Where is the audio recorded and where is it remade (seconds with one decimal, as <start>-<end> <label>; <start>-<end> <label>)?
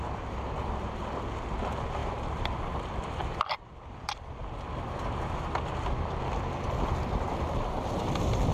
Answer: 0.0-2.0 recorded; 2.0-2.6 remade; 2.6-3.2 recorded; 3.2-4.4 remade; 4.4-8.5 recorded